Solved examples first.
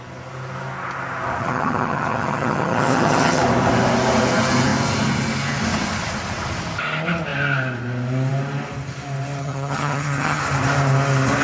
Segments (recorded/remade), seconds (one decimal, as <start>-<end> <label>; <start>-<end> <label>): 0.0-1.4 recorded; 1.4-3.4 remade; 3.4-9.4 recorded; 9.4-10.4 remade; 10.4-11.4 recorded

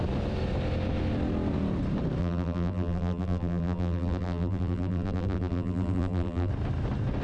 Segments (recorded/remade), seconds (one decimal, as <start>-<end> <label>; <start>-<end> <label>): 0.0-2.2 recorded; 2.2-6.5 remade; 6.5-7.2 recorded

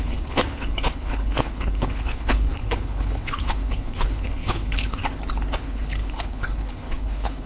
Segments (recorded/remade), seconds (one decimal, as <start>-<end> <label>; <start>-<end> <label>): 0.0-5.0 remade; 5.0-5.6 recorded; 5.6-7.5 remade

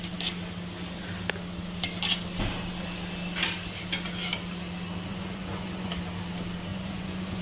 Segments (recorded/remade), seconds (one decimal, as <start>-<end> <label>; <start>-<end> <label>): 0.0-5.1 recorded; 5.1-5.9 remade; 5.9-6.7 recorded; 6.7-7.4 remade

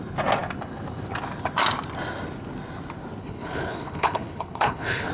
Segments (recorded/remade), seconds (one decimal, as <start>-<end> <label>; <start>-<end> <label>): 0.0-3.2 recorded; 3.2-5.1 remade

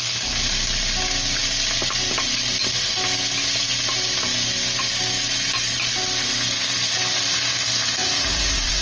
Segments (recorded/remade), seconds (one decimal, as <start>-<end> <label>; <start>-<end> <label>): 0.0-8.0 recorded; 8.0-8.8 remade

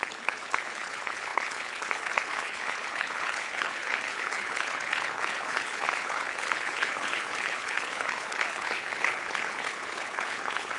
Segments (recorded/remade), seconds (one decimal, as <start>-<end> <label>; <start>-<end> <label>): 0.0-10.8 remade

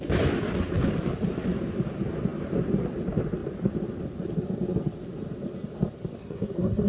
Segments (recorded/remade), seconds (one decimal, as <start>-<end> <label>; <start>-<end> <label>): 0.0-6.2 recorded; 6.2-6.9 remade